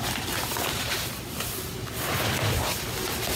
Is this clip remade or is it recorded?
recorded